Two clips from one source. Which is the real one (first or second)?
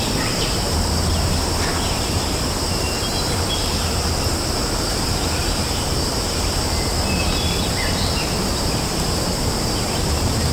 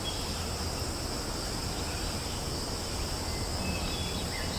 second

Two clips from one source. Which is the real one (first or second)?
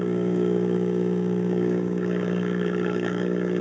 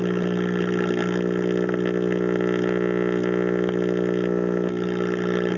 second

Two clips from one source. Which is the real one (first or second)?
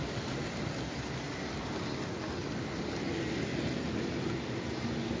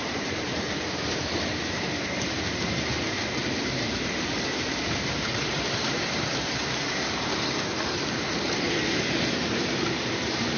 first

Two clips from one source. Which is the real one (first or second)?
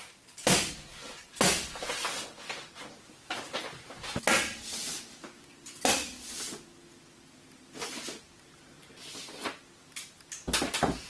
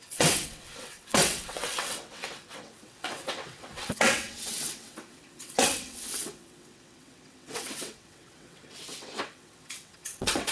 first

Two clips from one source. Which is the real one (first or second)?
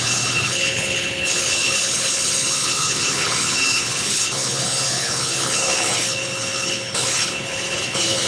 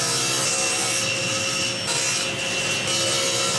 second